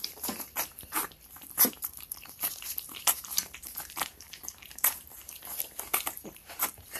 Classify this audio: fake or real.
fake